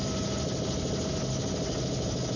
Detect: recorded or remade recorded